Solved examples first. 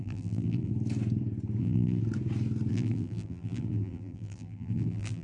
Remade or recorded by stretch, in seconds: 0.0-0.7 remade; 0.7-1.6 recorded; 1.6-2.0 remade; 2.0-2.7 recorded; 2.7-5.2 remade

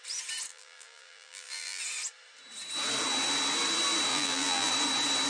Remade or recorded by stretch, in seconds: 0.0-0.5 recorded; 0.5-1.8 remade; 1.8-4.1 recorded; 4.1-4.7 remade; 4.7-5.3 recorded

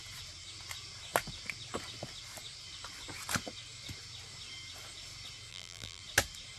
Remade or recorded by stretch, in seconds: 0.0-5.5 recorded; 5.5-6.0 remade; 6.0-6.6 recorded

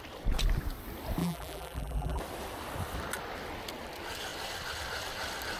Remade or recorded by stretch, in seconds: 0.0-1.2 recorded; 1.2-2.2 remade; 2.2-5.6 recorded

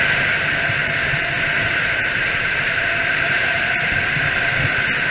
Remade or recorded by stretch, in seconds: 0.0-0.8 recorded; 0.8-3.9 remade; 3.9-5.1 recorded

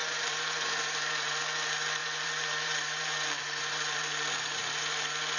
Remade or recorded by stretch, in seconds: 0.0-1.4 remade; 1.4-2.0 recorded; 2.0-4.6 remade; 4.6-5.4 recorded

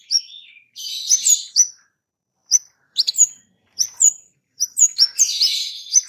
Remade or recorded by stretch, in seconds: 0.0-6.1 remade